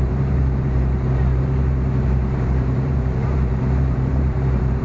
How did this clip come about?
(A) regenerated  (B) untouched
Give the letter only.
A